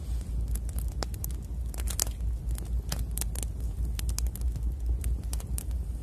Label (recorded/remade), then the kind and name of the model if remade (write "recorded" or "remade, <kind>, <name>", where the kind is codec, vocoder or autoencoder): recorded